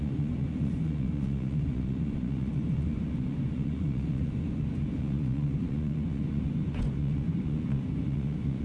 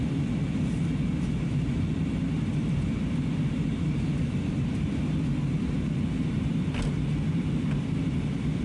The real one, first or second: second